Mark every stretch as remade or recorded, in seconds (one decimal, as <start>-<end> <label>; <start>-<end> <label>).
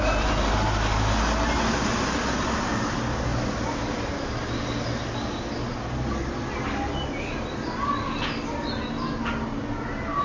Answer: 0.0-10.2 recorded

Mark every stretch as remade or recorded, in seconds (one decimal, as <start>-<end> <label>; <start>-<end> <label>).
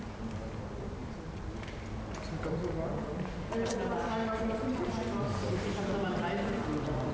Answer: 0.0-7.1 recorded